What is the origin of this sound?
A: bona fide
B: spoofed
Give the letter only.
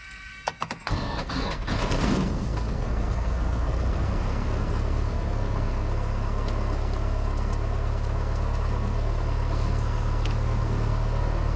B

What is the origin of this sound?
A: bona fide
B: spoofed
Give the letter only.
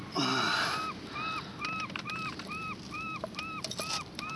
A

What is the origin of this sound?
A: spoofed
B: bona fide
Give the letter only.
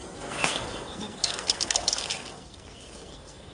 A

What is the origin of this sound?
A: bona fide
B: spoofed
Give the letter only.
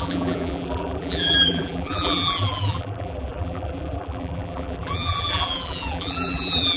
B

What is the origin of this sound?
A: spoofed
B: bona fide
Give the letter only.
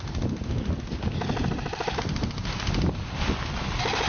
B